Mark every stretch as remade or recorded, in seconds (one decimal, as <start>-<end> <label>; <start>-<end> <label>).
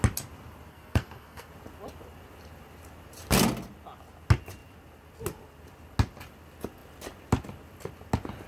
0.0-0.7 recorded; 0.7-1.5 remade; 1.5-8.5 recorded